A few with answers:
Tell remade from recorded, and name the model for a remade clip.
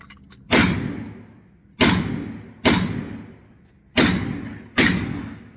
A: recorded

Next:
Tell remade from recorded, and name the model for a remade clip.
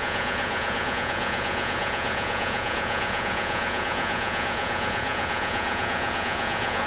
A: remade, vocoder, Vocos